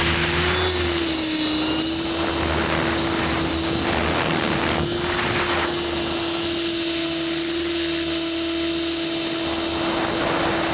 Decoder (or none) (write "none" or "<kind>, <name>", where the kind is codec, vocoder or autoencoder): none